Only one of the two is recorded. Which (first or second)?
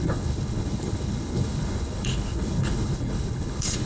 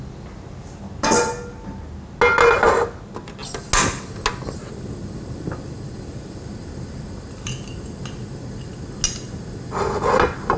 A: second